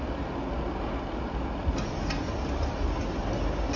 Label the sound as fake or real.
real